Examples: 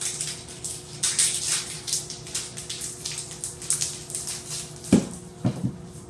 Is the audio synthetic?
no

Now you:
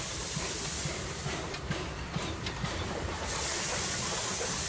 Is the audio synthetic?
no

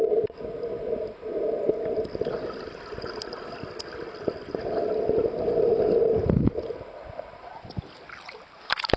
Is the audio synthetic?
no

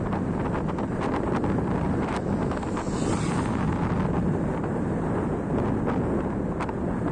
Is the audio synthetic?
no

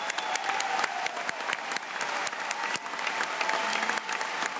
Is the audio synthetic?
no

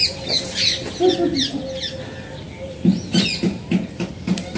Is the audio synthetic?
no